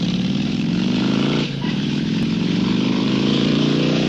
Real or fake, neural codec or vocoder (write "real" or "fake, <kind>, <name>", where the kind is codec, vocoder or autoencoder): fake, vocoder, BigVGAN v2